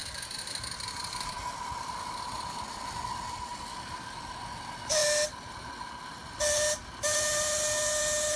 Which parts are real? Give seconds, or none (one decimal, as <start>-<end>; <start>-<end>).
2.8-8.4